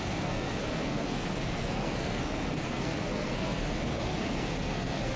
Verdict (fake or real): fake